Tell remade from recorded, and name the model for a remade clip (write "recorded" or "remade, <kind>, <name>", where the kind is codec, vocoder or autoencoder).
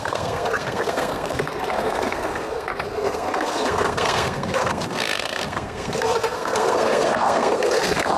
remade, codec, SNAC